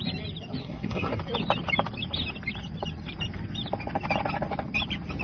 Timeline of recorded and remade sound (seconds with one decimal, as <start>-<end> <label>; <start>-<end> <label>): 0.0-0.6 recorded; 0.6-1.2 remade; 1.2-5.2 recorded